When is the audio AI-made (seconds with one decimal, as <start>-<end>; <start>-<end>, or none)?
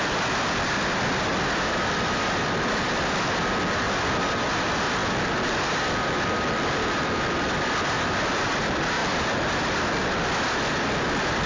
0.0-5.0; 5.7-11.5